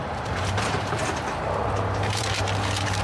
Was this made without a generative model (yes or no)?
no